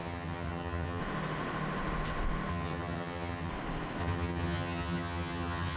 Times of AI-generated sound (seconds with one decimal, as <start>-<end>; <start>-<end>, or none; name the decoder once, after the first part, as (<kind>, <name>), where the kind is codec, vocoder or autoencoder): 0.0-1.0 (vocoder, HiFi-GAN); 2.5-3.5; 4.0-5.8

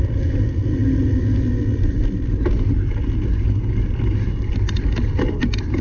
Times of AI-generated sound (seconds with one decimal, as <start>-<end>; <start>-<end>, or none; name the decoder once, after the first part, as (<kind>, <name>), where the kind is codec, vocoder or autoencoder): none

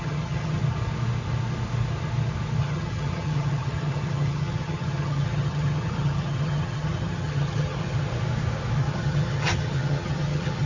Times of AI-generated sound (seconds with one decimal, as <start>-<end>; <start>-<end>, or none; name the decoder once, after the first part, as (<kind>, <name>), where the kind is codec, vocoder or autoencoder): 0.0-0.6 (vocoder, HiFi-GAN); 2.6-8.1; 8.8-10.7

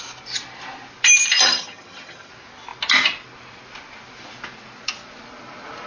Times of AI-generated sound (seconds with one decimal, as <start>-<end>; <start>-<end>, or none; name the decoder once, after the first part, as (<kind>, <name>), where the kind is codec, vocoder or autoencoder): 1.5-2.3 (vocoder, HiFi-GAN)

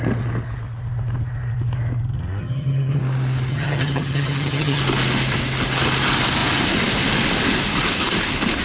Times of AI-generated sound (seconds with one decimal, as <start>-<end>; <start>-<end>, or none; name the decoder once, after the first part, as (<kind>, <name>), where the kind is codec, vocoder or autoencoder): 2.4-3.0 (vocoder, HiFi-GAN); 3.5-4.8